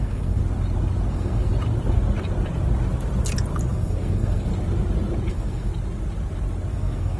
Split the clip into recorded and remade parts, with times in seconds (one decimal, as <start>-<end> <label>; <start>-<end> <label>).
0.0-0.4 remade; 0.4-1.1 recorded; 1.1-1.5 remade; 1.5-3.7 recorded; 3.7-4.5 remade; 4.5-5.3 recorded; 5.3-5.7 remade; 5.7-6.7 recorded; 6.7-7.2 remade